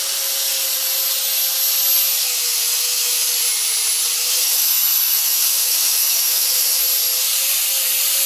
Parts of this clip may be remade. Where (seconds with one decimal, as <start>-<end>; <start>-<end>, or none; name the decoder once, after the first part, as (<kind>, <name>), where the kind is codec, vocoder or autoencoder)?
2.2-3.3 (autoencoder, DAC-VAE); 4.2-6.8